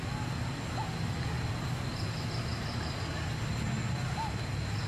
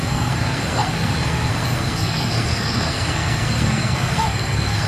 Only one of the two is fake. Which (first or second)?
second